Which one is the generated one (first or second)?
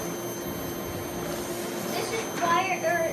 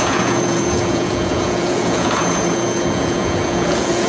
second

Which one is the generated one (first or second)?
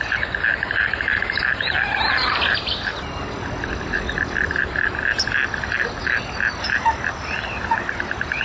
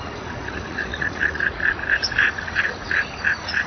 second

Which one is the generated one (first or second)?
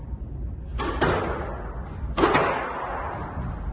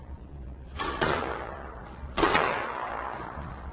second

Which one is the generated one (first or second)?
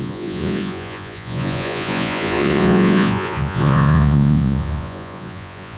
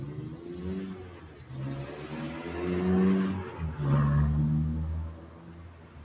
first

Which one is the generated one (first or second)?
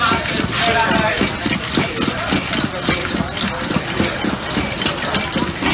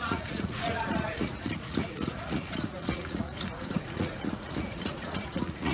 second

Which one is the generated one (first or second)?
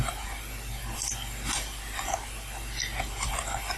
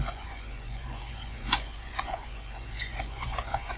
second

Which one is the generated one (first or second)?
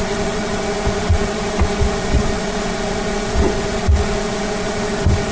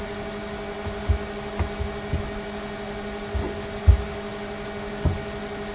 first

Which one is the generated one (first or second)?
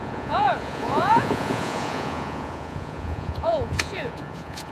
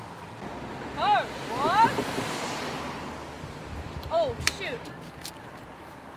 first